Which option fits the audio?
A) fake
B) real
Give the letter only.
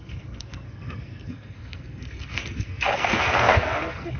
A